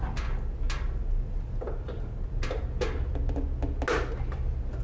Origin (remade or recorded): recorded